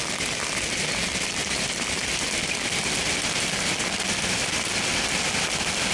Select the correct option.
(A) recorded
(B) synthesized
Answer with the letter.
A